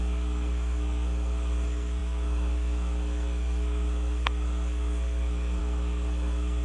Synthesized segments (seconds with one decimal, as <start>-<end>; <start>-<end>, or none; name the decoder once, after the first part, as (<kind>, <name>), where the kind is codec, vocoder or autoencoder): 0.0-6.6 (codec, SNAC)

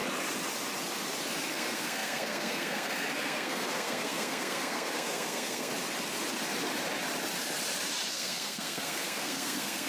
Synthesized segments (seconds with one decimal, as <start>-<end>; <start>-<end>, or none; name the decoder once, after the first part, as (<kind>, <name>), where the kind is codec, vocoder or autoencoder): 1.5-5.7 (codec, SNAC); 8.1-9.9

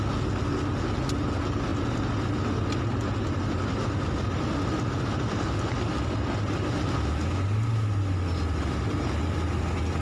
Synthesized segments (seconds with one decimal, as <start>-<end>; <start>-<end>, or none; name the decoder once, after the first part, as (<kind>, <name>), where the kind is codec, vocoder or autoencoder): none